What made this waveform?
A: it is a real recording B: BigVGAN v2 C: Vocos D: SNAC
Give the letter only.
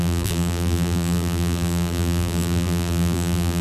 B